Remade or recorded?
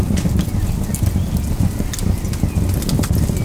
recorded